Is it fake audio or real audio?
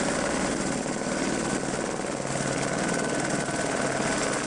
real